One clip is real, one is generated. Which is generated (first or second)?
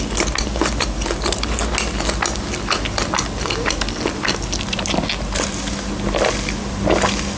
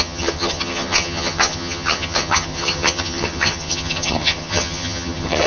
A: second